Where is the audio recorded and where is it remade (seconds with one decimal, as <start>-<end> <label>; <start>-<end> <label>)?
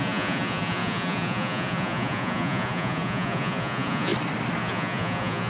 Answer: 0.0-4.1 remade; 4.1-4.6 recorded; 4.6-5.5 remade